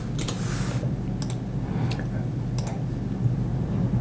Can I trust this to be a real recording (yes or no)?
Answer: yes